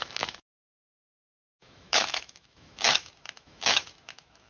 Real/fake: fake